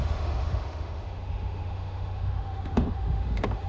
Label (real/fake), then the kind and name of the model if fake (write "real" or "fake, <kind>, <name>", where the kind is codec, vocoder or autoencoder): fake, autoencoder, DAC-VAE